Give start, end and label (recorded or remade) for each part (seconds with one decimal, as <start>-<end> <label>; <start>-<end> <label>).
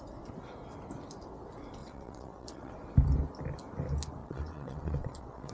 0.0-1.8 recorded; 1.8-2.7 remade; 2.7-4.2 recorded; 4.2-5.5 remade